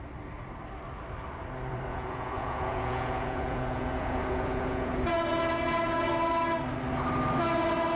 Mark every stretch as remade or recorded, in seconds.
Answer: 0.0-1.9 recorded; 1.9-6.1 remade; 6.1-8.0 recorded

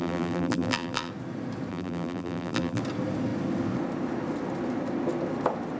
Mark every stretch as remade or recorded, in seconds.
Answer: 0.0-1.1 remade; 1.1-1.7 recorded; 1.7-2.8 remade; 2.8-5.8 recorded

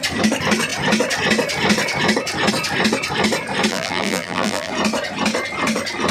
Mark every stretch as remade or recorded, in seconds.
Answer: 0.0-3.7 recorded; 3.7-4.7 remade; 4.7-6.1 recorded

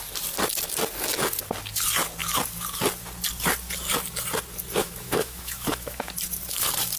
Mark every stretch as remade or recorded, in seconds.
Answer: 0.0-4.8 recorded; 4.8-6.1 remade; 6.1-7.0 recorded

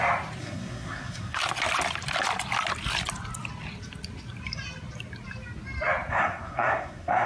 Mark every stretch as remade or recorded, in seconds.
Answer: 0.0-0.4 recorded; 0.4-1.4 remade; 1.4-6.1 recorded; 6.1-7.3 remade